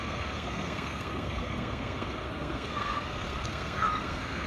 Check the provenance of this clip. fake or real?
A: fake